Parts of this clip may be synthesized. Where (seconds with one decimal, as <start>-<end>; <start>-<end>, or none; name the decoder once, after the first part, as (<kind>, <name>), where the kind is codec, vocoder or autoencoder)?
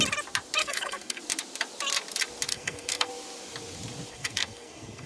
0.6-1.2 (codec, SNAC); 2.5-3.1; 4.1-5.1